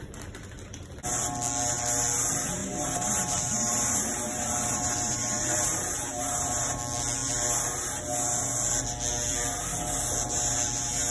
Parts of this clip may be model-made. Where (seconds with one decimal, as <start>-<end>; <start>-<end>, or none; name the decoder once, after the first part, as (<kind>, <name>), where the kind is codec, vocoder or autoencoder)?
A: 2.6-6.8 (vocoder, BigVGAN v2)